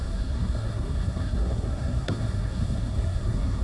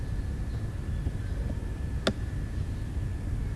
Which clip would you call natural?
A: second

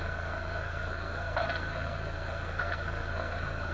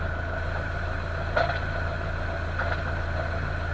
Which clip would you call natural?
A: second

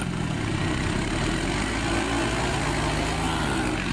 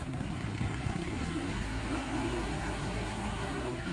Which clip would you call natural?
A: first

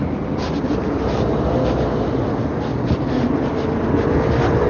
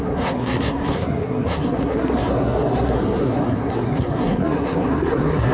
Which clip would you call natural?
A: first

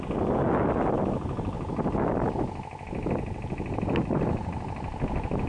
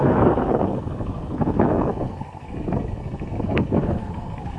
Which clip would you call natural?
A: first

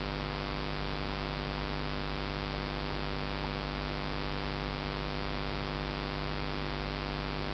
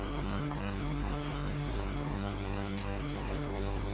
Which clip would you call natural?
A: first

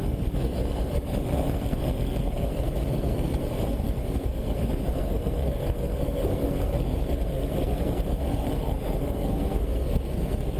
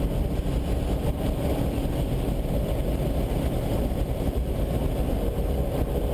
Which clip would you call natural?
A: second